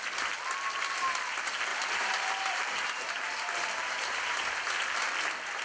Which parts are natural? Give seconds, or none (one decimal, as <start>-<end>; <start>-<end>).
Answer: 0.0-1.7; 5.1-5.6